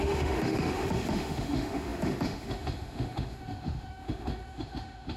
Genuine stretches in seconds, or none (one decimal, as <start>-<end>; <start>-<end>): none